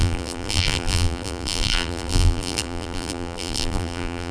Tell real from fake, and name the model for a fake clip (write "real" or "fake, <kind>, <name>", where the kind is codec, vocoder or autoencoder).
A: fake, vocoder, BigVGAN v2